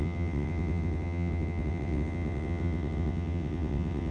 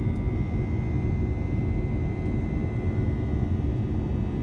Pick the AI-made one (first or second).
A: first